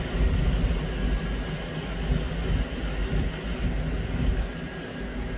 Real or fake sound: real